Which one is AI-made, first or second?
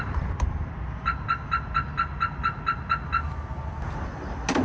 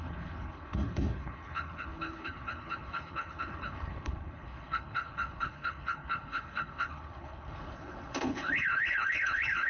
second